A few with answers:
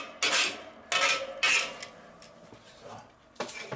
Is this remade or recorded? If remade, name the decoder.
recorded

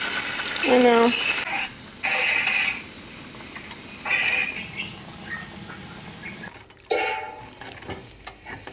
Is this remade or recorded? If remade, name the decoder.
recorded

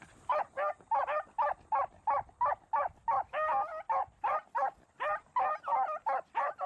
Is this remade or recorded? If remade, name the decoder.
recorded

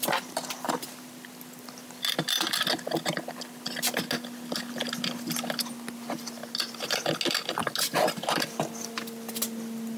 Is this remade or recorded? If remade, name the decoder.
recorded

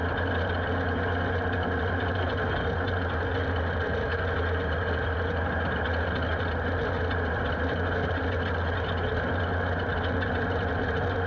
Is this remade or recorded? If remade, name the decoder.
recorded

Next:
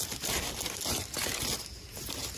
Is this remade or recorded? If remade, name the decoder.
recorded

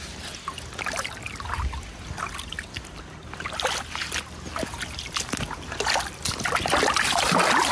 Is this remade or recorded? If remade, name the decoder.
recorded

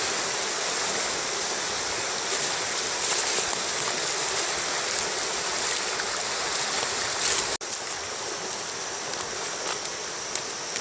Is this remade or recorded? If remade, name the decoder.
recorded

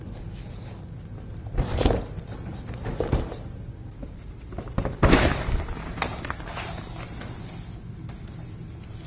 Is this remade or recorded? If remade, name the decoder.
recorded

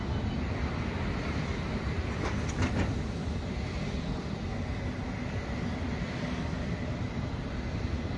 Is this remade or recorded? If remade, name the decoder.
recorded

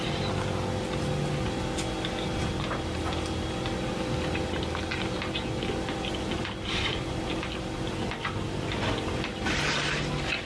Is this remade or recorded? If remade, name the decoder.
recorded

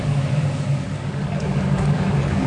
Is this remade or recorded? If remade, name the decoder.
remade, codec, DAC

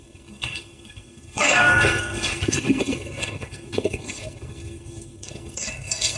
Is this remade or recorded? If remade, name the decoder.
remade, codec, SNAC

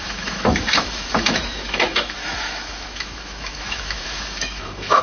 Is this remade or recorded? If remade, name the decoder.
remade, autoencoder, DAC-VAE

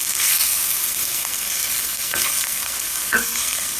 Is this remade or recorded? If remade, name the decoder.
remade, codec, SNAC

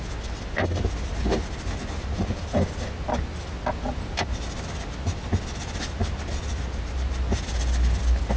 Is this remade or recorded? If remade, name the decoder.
recorded